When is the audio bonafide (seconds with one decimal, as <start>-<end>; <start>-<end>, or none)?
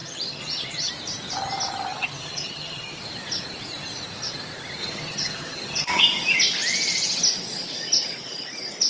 0.9-1.9; 3.0-4.8; 6.0-8.9